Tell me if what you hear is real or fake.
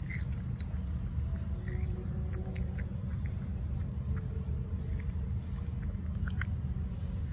real